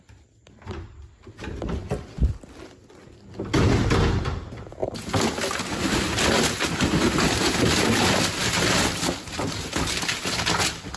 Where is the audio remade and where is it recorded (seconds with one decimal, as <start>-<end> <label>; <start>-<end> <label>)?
0.0-11.0 recorded